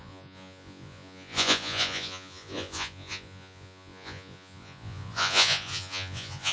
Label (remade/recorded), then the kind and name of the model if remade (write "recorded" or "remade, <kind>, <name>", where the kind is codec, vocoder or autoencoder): remade, vocoder, Vocos